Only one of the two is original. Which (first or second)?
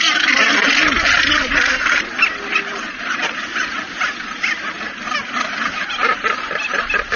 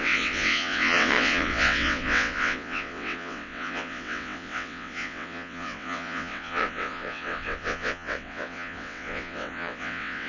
first